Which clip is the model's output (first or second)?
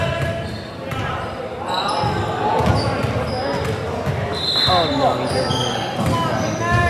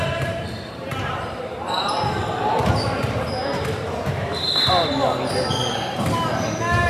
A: second